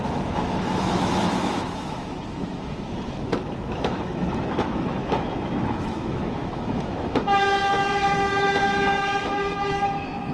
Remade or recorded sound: remade